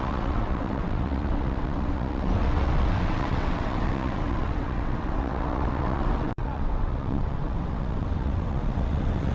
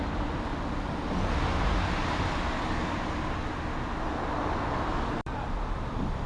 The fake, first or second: first